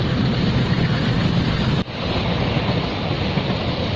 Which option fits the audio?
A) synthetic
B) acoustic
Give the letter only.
B